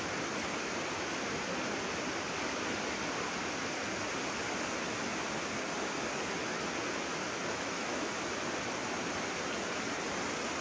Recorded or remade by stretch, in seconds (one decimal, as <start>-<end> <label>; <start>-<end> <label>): 0.0-7.4 recorded; 7.4-8.1 remade; 8.1-10.6 recorded